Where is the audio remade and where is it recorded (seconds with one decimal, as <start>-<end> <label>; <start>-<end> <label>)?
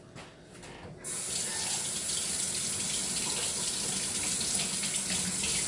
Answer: 0.0-5.7 recorded